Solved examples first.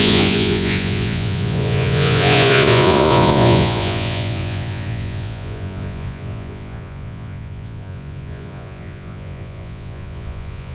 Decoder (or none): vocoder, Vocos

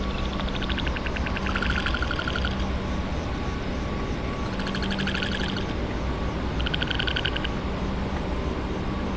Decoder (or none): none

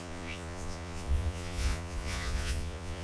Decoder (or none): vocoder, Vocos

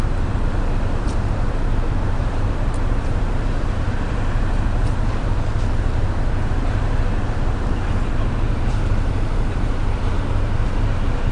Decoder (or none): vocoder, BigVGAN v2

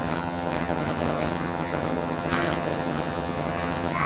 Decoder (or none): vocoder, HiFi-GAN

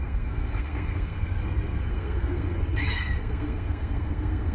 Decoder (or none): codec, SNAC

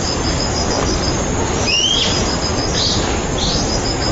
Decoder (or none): none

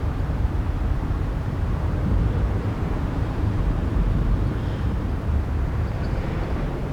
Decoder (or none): vocoder, BigVGAN v2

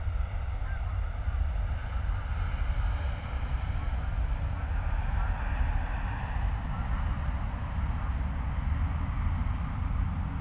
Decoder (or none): none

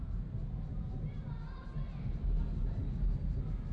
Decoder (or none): none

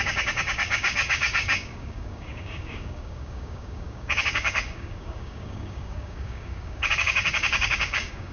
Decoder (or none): codec, DAC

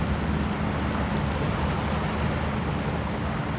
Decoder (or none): none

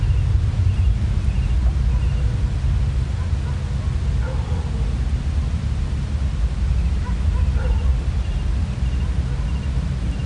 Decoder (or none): none